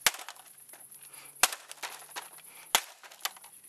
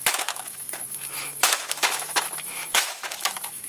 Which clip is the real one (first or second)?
first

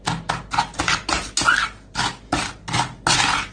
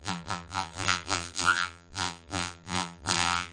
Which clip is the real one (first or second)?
first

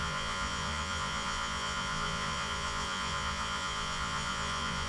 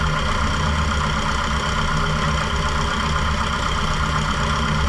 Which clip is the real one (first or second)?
second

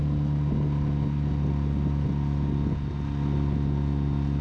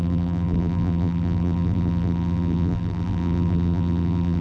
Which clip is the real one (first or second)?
first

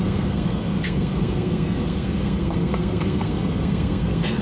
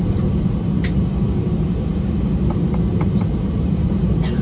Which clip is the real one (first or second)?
second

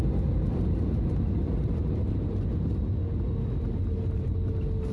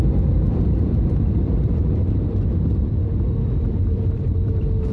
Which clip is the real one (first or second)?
first